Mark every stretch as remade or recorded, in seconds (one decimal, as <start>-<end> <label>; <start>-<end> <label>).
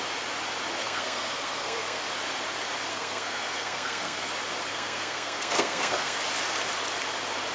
0.0-0.8 recorded; 0.8-2.0 remade; 2.0-2.9 recorded; 2.9-4.3 remade; 4.3-4.7 recorded; 4.7-6.2 remade; 6.2-7.5 recorded